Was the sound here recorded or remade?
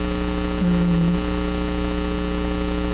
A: recorded